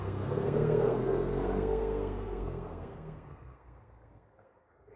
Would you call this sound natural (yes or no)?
no